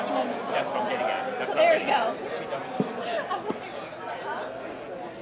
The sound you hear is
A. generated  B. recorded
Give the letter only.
B